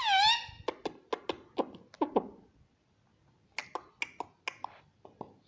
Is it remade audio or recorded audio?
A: recorded